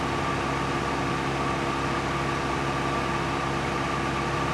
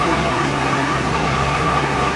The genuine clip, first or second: first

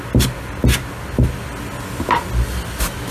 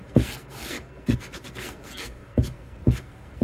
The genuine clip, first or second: first